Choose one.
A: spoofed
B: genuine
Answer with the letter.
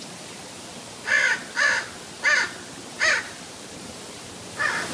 B